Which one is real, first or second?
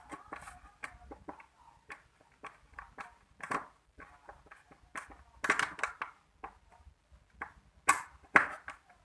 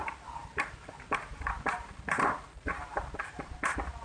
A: first